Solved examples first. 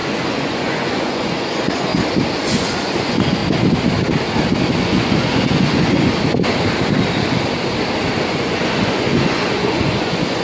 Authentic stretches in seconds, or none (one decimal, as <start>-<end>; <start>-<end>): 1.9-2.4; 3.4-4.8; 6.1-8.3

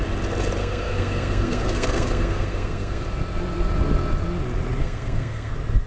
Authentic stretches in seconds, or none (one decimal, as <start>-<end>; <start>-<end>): 0.0-0.6; 3.0-4.8; 5.5-5.9

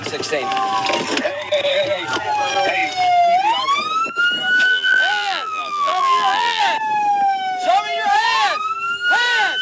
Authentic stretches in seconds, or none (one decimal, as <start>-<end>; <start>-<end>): 0.0-4.7; 6.6-9.6

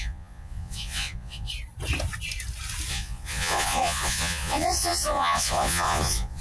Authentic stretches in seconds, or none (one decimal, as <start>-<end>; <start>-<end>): 1.5-2.9

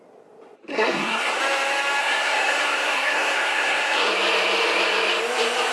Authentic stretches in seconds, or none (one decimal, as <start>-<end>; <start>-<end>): 0.0-0.7; 1.4-2.0; 4.1-5.7